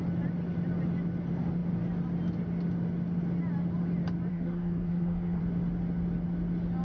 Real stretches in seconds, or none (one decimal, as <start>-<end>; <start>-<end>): 0.0-4.3; 5.4-6.8